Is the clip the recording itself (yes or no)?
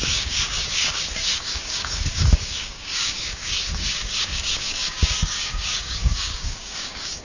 no